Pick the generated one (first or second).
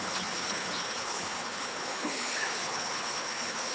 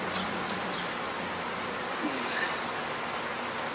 first